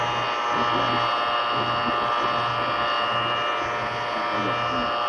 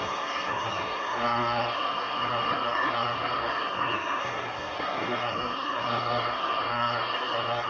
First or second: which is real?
first